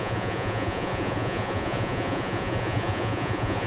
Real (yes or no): no